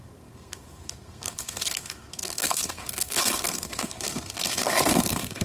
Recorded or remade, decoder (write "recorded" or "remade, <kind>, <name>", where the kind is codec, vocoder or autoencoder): remade, codec, SNAC